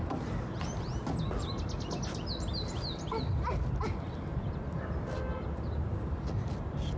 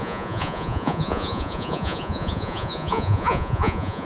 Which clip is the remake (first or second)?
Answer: second